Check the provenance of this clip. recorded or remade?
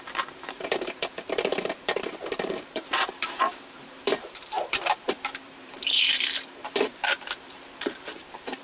remade